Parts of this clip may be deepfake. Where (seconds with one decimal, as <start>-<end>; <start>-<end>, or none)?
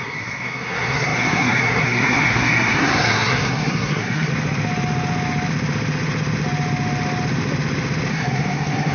0.0-4.3; 8.1-8.9